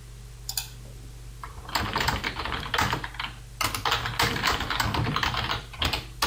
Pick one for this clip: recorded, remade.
recorded